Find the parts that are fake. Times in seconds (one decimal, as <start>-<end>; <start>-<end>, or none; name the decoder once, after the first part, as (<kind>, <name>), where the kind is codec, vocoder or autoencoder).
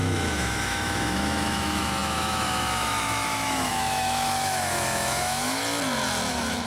0.0-5.6 (autoencoder, DAC-VAE); 6.3-6.7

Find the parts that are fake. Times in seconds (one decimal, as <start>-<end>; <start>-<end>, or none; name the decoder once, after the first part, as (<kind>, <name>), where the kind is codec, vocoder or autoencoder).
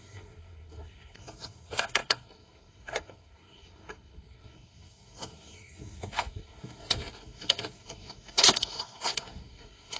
0.0-10.0 (codec, SNAC)